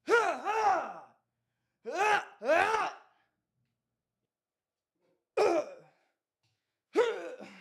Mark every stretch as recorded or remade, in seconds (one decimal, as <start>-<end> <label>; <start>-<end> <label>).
0.0-0.7 remade; 0.7-1.2 recorded; 1.2-1.7 remade; 1.7-5.6 recorded; 5.6-7.6 remade